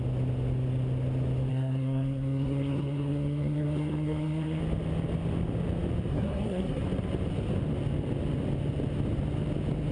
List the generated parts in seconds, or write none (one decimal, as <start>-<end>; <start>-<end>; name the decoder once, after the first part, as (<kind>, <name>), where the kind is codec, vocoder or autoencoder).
1.5-4.6 (codec, SNAC); 6.1-6.8